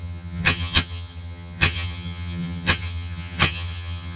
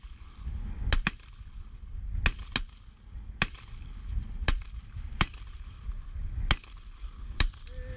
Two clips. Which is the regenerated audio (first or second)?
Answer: first